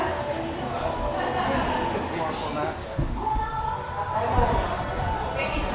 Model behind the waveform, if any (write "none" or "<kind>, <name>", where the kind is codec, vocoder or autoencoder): none